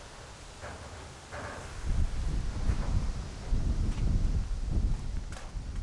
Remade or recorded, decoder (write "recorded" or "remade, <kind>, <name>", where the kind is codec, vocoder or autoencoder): recorded